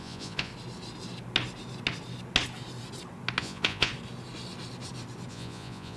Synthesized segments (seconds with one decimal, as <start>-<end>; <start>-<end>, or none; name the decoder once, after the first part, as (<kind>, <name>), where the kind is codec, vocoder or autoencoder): 0.0-0.5 (vocoder, Vocos); 3.4-3.9; 5.3-6.0